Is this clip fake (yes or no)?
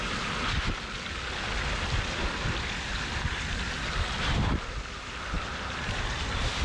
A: no